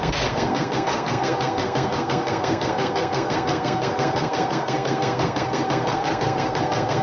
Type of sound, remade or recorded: remade